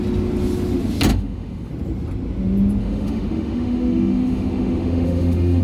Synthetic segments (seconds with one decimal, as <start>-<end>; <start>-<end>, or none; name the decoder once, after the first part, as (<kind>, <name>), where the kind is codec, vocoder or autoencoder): 1.1-1.7 (autoencoder, DAC-VAE); 2.8-5.6